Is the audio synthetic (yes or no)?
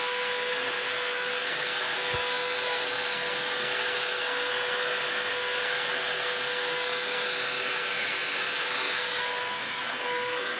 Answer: yes